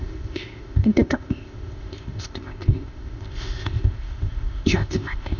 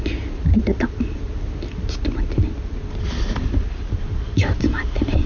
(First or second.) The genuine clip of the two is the second